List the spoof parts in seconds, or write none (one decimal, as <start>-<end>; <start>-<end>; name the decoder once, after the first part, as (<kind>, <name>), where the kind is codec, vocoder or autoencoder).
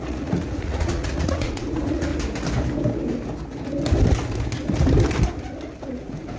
0.0-2.1 (vocoder, Vocos); 5.9-6.4